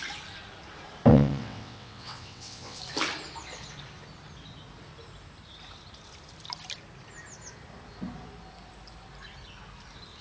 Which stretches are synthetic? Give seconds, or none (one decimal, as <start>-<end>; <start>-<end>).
1.1-2.8